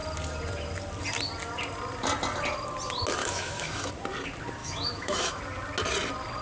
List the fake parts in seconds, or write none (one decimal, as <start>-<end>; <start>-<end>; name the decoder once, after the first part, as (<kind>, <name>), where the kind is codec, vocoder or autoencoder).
3.2-3.9 (autoencoder, DAC-VAE); 4.6-5.4